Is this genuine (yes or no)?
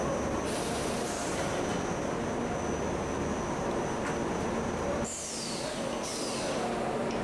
yes